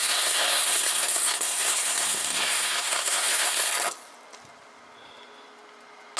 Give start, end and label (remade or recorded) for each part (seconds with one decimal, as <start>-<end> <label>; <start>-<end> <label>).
0.0-3.7 remade; 3.7-6.2 recorded